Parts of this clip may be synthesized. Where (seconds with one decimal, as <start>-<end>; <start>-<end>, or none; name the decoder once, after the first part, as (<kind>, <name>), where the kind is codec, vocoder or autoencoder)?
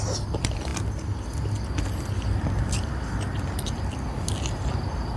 none